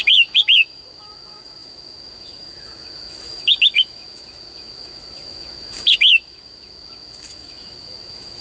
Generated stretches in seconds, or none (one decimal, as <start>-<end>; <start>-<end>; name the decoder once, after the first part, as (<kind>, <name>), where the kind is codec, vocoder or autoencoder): 0.0-8.4 (autoencoder, DAC-VAE)